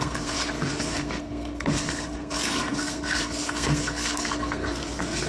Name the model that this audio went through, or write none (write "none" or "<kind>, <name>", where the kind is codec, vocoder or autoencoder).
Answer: codec, SNAC